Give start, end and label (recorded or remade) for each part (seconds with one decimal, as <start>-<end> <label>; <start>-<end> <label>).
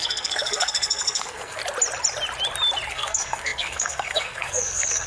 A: 0.0-1.6 remade; 1.6-2.9 recorded; 2.9-5.1 remade